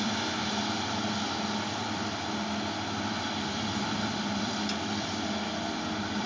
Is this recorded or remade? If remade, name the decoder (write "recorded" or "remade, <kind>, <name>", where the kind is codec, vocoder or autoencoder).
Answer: remade, vocoder, BigVGAN v2